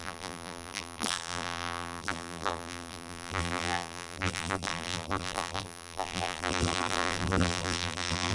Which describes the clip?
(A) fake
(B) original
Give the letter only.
A